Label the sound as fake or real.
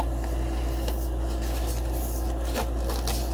real